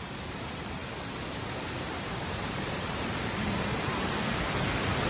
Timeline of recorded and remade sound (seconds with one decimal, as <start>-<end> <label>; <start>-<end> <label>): 0.0-0.8 remade; 0.8-2.1 recorded; 2.1-3.9 remade; 3.9-4.6 recorded; 4.6-5.1 remade